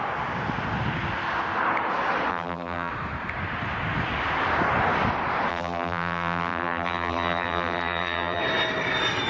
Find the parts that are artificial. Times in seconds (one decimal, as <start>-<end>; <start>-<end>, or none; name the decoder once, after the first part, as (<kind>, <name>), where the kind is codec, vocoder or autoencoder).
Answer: 2.3-2.9 (vocoder, BigVGAN v2); 5.5-8.4